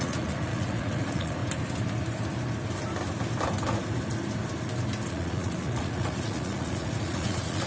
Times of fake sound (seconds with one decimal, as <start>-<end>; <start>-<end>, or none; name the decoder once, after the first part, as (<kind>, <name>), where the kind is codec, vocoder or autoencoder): 0.0-1.4 (vocoder, Vocos); 5.1-7.7